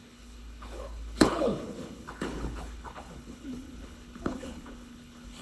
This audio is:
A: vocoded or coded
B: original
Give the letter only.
A